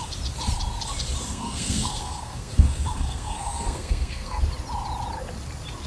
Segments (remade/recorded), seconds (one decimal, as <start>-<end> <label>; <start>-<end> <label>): 0.0-1.3 recorded; 1.3-4.4 remade; 4.4-5.9 recorded